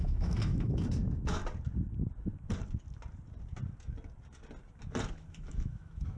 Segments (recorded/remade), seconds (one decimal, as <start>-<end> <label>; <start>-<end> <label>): 0.0-1.4 remade; 1.4-5.1 recorded; 5.1-6.2 remade